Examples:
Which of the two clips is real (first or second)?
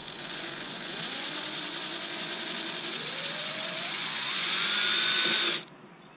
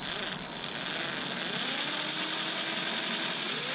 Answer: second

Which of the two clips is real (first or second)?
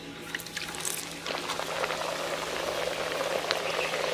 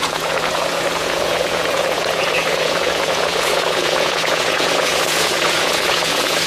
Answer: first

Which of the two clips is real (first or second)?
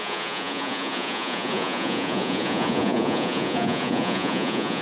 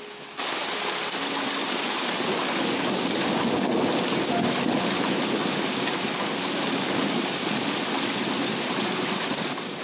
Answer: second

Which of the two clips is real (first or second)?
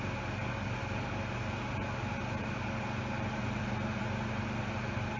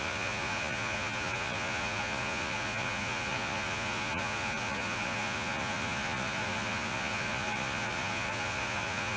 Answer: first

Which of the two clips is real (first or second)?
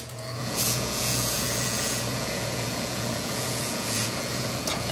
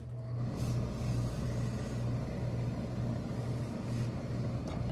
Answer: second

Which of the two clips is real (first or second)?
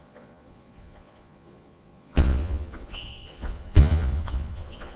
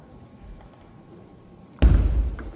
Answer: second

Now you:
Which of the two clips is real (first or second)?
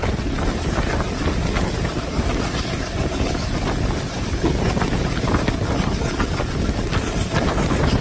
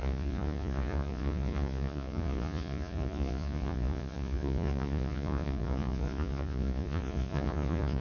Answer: first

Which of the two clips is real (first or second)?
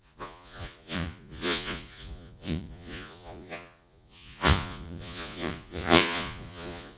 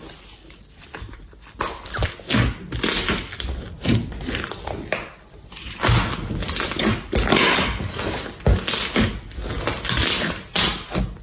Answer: second